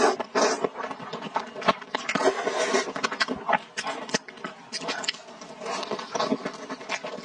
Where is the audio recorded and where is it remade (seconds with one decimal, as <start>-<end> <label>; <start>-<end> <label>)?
0.0-7.2 recorded